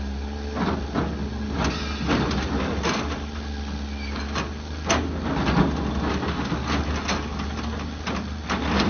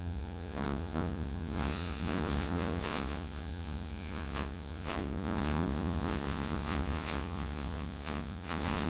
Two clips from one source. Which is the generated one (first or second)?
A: second